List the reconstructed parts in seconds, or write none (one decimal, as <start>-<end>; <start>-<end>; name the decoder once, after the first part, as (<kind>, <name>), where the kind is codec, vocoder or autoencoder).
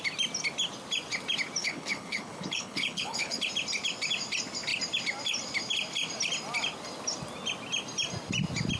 1.6-3.4 (codec, HILCodec)